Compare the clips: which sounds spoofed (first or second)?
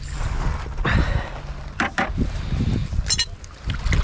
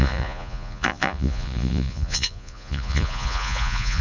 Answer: second